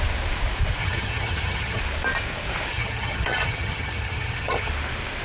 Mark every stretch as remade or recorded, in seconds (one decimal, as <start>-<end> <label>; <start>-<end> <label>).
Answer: 0.0-0.8 recorded; 0.8-1.8 remade; 1.8-2.7 recorded; 2.7-4.7 remade; 4.7-5.2 recorded

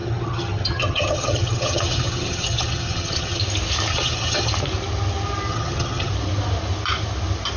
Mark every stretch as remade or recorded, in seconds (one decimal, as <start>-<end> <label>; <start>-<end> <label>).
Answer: 0.0-3.4 remade; 3.4-3.9 recorded; 3.9-4.5 remade; 4.5-5.5 recorded; 5.5-6.1 remade; 6.1-7.6 recorded

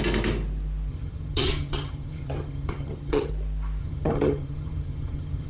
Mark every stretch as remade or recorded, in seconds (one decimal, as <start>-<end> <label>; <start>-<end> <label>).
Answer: 0.0-0.9 recorded; 0.9-3.3 remade; 3.3-3.8 recorded; 3.8-5.5 remade

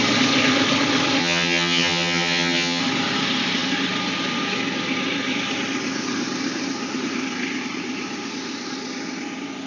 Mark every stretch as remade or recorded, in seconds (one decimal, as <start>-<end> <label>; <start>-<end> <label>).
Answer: 0.0-1.2 recorded; 1.2-2.8 remade; 2.8-9.7 recorded